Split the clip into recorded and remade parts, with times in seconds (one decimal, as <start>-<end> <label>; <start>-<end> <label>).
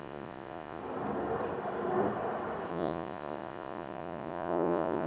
0.0-0.8 remade; 0.8-2.7 recorded; 2.7-5.1 remade